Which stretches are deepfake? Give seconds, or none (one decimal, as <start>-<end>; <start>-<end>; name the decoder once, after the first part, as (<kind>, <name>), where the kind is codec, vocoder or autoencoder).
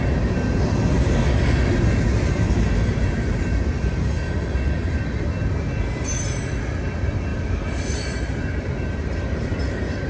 3.8-5.0 (vocoder, BigVGAN v2); 7.3-9.6